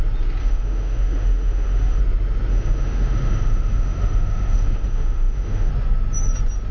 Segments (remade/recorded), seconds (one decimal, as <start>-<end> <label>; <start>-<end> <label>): 0.0-0.4 recorded; 0.4-2.0 remade; 2.0-2.5 recorded; 2.5-5.7 remade; 5.7-6.7 recorded